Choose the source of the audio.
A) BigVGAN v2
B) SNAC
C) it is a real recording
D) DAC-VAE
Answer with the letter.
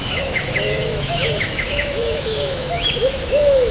D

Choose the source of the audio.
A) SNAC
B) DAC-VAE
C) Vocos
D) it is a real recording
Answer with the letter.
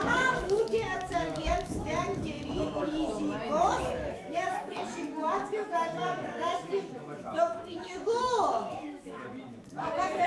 B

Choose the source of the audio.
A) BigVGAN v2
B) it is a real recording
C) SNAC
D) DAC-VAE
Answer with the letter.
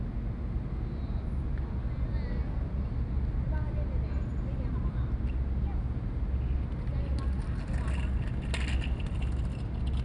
B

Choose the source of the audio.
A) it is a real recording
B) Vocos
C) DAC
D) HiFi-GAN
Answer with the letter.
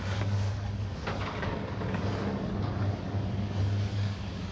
C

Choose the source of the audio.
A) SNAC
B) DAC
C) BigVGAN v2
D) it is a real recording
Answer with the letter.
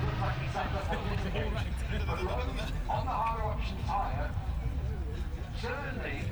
C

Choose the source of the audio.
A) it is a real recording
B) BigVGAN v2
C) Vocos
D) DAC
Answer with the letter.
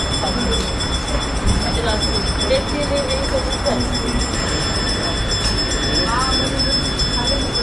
A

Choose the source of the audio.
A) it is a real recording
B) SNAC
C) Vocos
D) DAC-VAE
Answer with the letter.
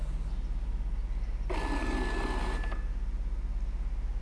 A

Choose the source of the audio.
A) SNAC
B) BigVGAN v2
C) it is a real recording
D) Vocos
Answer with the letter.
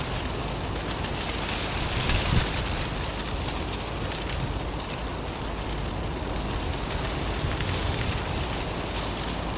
C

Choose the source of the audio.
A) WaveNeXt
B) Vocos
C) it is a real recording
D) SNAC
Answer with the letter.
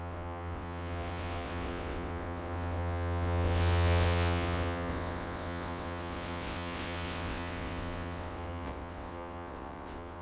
A